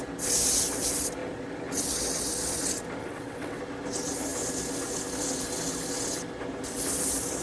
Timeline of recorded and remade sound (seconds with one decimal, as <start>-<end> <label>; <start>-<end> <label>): 0.0-3.0 recorded; 3.0-3.6 remade; 3.6-7.4 recorded